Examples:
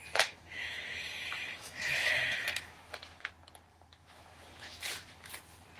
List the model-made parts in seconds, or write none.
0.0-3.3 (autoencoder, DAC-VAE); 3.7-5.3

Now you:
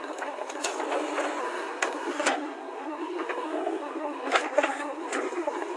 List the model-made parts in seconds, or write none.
0.0-0.7 (codec, SNAC); 1.4-5.8

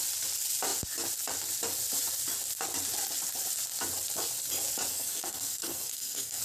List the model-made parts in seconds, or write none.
4.9-6.4 (codec, SNAC)

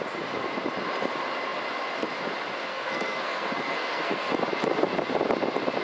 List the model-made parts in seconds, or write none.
2.7-4.3 (codec, SNAC)

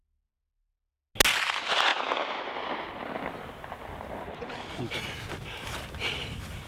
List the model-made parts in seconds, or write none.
none

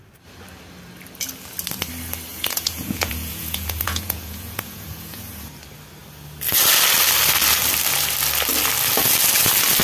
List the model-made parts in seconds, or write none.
2.3-5.5 (vocoder, Vocos)

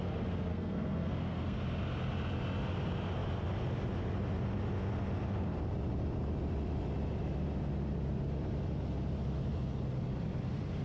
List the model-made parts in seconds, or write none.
0.5-1.6 (codec, SNAC)

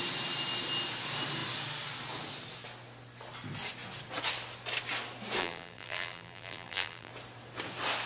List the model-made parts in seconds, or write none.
5.4-7.1 (vocoder, BigVGAN v2)